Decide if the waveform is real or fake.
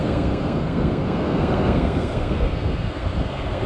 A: fake